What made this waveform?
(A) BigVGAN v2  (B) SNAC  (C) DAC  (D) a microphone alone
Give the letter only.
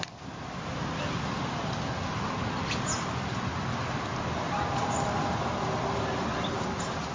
D